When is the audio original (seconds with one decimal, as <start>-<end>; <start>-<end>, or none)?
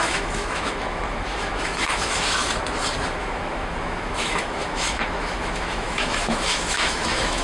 2.4-3.1